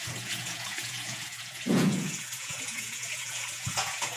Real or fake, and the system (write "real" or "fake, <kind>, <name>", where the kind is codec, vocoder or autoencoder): fake, vocoder, Vocos